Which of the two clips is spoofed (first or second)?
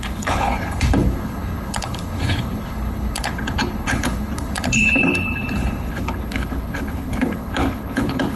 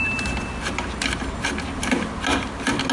first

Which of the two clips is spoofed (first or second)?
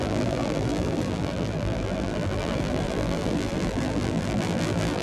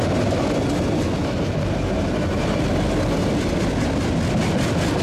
first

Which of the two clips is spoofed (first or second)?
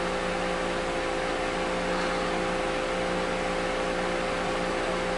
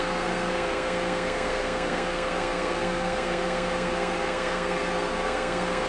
second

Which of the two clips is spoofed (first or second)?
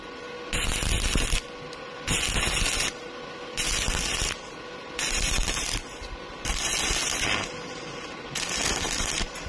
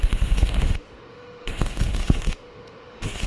second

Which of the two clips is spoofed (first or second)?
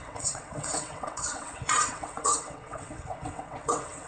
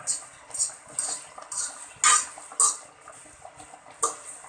first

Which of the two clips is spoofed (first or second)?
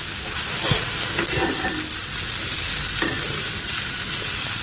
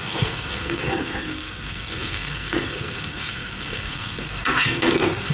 second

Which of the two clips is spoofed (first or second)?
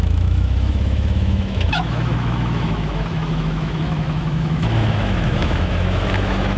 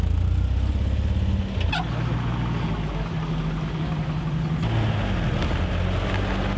first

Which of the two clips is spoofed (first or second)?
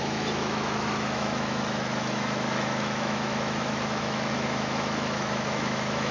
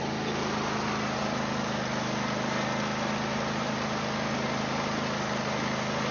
first